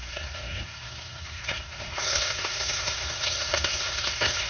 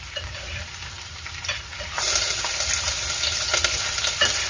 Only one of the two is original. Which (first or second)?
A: second